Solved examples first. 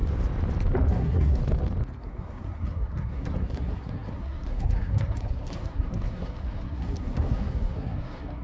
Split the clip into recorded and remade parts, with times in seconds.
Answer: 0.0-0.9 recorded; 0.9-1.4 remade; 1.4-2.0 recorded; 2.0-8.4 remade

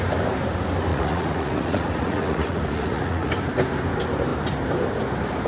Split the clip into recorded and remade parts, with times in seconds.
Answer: 0.0-0.9 recorded; 0.9-3.3 remade; 3.3-5.5 recorded

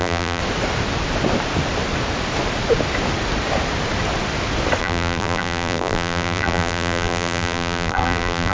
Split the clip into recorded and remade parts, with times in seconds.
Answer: 0.0-0.4 remade; 0.4-4.8 recorded; 4.8-8.5 remade

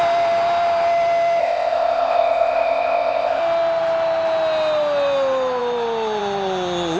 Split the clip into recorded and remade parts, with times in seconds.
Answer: 0.0-1.4 recorded; 1.4-3.4 remade; 3.4-7.0 recorded